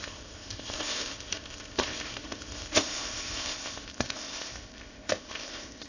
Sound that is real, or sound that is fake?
fake